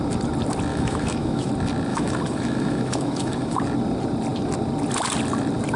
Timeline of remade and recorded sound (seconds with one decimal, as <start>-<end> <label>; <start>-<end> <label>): 0.0-0.7 recorded; 0.7-1.5 remade; 1.5-1.9 recorded; 1.9-3.6 remade; 3.6-5.8 recorded